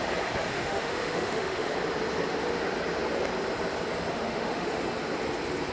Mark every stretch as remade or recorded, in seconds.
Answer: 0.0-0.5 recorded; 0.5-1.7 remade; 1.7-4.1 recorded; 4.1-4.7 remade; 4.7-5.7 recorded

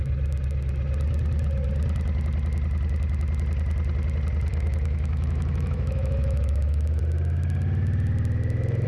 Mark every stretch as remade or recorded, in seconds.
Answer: 0.0-4.5 recorded; 4.5-7.0 remade; 7.0-8.9 recorded

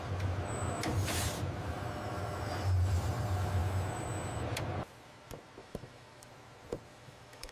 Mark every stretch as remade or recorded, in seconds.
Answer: 0.0-5.6 recorded; 5.6-6.3 remade; 6.3-6.9 recorded; 6.9-7.5 remade

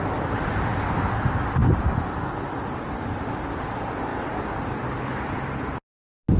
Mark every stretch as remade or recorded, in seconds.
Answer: 0.0-6.4 recorded

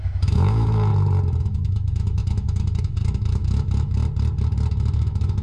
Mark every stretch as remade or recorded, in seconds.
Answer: 0.0-0.9 remade; 0.9-1.4 recorded; 1.4-4.0 remade; 4.0-4.7 recorded; 4.7-5.4 remade

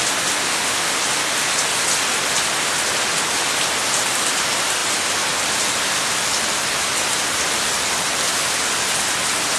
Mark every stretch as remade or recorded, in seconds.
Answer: 0.0-0.5 recorded; 0.5-1.0 remade; 1.0-9.6 recorded